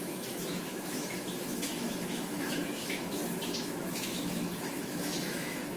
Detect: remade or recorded remade